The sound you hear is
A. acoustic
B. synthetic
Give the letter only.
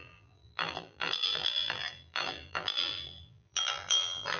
B